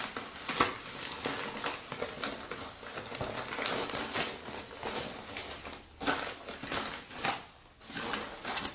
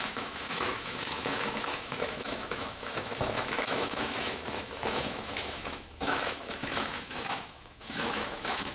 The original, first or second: first